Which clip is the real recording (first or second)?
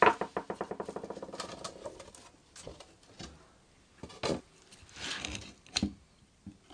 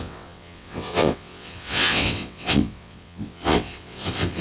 first